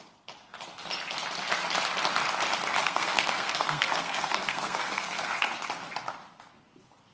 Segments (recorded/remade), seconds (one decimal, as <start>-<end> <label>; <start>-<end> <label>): 0.0-2.8 recorded; 2.8-5.3 remade; 5.3-7.1 recorded